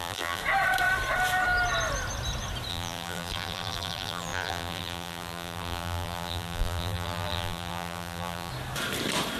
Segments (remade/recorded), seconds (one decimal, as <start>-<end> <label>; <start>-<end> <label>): 0.0-0.4 remade; 0.4-2.7 recorded; 2.7-8.5 remade; 8.5-9.4 recorded